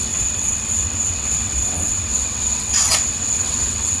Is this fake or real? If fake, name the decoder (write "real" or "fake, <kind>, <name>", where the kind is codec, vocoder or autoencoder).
fake, vocoder, WaveNeXt